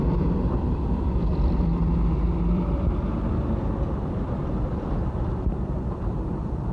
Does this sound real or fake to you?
fake